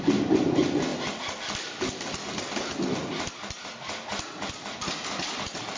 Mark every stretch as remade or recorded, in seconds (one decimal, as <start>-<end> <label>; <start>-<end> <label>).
0.0-5.8 recorded